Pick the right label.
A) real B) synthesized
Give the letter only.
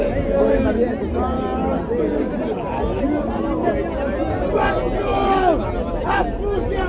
A